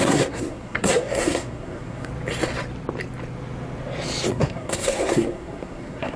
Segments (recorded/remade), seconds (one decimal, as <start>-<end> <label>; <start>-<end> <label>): 0.0-2.1 remade; 2.1-4.3 recorded; 4.3-6.2 remade